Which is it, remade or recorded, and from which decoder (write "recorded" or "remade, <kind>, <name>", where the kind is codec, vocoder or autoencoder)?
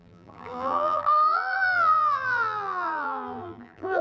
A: remade, vocoder, BigVGAN v2